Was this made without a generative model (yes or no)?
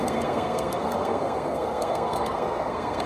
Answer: no